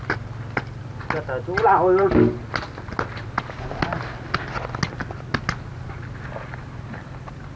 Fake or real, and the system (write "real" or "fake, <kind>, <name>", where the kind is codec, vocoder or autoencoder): real